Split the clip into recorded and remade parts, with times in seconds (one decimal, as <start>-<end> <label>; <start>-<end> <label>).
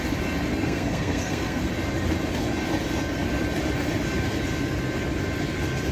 0.0-0.5 recorded; 0.5-1.7 remade; 1.7-5.9 recorded